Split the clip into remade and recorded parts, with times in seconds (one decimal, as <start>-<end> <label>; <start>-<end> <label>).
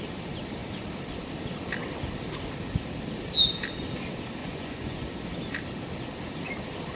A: 0.0-4.4 recorded; 4.4-5.1 remade; 5.1-7.0 recorded